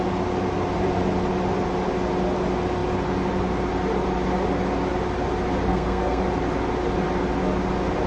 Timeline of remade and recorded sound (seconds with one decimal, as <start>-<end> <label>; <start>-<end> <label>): 0.0-5.7 recorded; 5.7-6.2 remade; 6.2-8.1 recorded